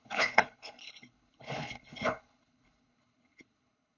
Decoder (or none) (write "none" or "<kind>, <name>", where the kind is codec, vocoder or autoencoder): codec, HILCodec